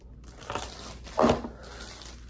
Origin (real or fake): real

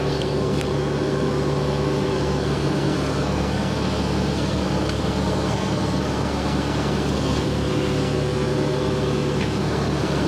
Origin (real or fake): fake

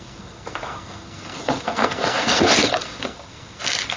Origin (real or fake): fake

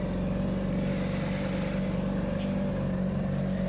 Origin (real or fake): real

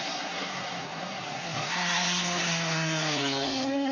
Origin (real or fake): fake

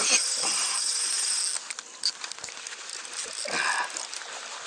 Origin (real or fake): real